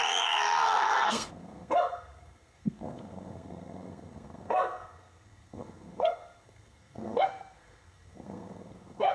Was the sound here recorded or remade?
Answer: remade